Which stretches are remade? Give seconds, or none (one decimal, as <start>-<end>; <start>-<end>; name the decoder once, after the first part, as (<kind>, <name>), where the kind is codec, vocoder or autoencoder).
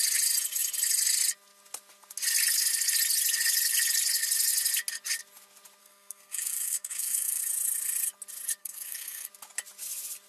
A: 5.8-7.4 (codec, SNAC); 8.6-9.3